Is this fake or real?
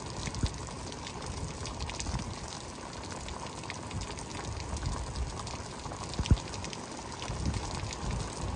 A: real